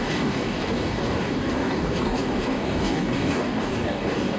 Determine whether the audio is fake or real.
fake